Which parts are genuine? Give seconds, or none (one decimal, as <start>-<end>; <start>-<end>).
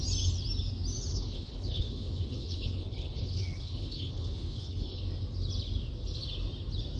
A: 0.0-1.1; 5.0-7.0